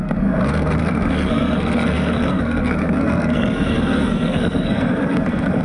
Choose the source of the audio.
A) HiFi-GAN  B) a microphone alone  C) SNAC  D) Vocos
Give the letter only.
C